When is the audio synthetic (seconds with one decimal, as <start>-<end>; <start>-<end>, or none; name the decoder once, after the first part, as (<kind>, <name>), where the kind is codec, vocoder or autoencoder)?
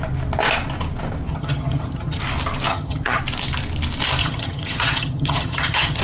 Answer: 1.3-2.2 (vocoder, HiFi-GAN); 2.7-3.2; 4.2-6.0